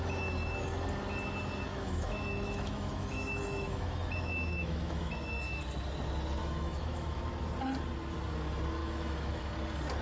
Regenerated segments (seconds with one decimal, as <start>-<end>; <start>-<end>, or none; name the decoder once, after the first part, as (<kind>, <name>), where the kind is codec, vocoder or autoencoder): 1.7-5.6 (autoencoder, DAC-VAE); 6.4-7.2; 8.8-9.5